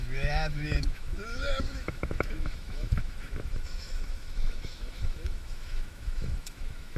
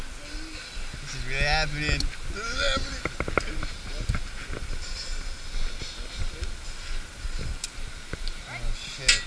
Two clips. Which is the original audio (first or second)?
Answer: second